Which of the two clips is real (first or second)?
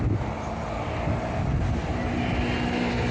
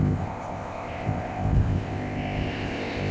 first